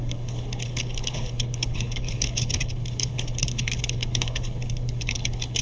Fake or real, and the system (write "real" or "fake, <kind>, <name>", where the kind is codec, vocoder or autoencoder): fake, codec, HILCodec